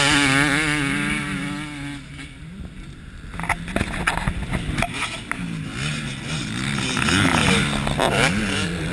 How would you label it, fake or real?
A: real